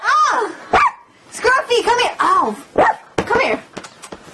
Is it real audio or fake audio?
real